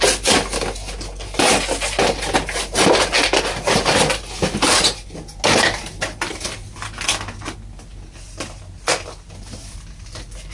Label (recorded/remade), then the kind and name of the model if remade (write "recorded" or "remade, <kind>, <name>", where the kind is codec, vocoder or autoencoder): recorded